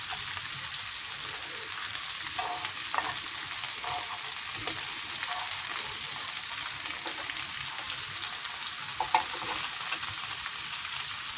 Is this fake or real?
real